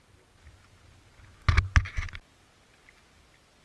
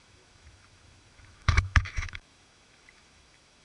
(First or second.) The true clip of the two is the first